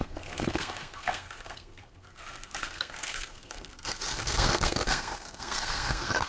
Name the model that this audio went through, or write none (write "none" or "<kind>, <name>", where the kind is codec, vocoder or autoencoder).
codec, SNAC